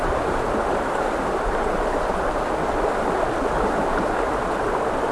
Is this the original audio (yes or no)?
yes